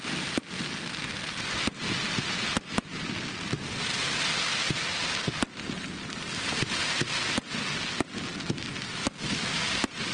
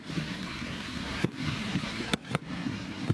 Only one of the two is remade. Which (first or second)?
second